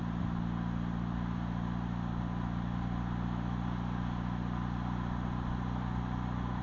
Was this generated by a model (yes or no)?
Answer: no